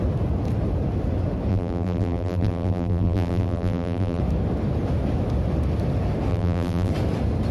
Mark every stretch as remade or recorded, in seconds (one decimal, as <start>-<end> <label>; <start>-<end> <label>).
0.0-1.5 recorded; 1.5-4.2 remade; 4.2-6.3 recorded; 6.3-6.9 remade; 6.9-7.5 recorded